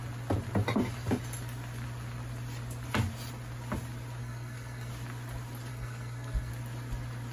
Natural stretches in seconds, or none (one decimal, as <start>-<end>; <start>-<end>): 0.0-4.2; 4.9-5.7; 6.5-7.3

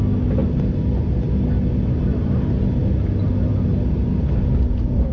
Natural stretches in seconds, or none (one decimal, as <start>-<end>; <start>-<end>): 0.0-5.1

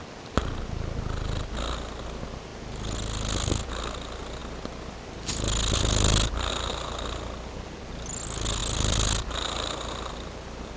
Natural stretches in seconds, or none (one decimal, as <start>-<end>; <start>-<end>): 0.0-10.8

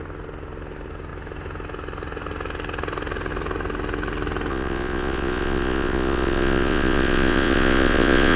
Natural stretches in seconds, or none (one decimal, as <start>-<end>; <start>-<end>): 0.0-4.5

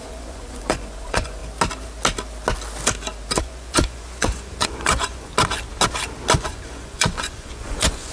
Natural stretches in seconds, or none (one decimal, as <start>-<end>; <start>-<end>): 1.4-3.4; 5.3-6.4